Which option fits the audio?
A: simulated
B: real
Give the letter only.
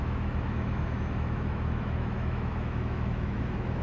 A